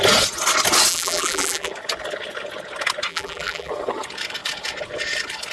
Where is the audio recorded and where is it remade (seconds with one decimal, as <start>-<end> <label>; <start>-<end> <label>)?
0.0-0.9 recorded; 0.9-1.7 remade; 1.7-3.1 recorded; 3.1-3.7 remade; 3.7-5.5 recorded